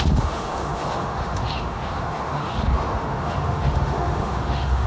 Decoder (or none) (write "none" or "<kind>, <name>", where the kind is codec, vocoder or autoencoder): autoencoder, DAC-VAE